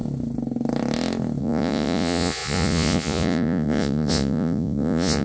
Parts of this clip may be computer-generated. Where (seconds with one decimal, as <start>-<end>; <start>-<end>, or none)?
1.4-5.2